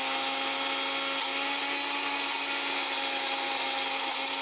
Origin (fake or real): real